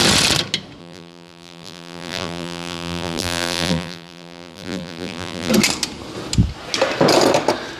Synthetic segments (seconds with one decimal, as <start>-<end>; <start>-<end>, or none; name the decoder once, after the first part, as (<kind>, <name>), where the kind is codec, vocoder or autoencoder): 0.8-5.5 (vocoder, BigVGAN v2)